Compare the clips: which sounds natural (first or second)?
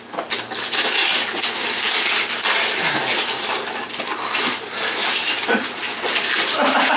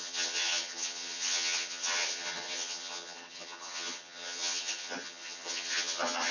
first